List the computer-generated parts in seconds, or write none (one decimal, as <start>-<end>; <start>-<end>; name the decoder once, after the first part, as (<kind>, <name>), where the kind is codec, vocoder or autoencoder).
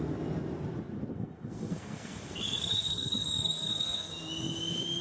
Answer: 1.1-4.1 (codec, SNAC)